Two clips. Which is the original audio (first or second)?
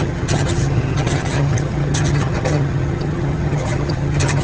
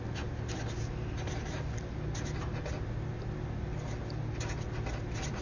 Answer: second